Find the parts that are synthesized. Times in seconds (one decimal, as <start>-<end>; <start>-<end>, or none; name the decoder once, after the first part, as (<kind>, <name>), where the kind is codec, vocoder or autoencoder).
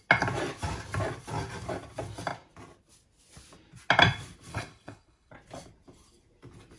4.5-5.3 (codec, HILCodec)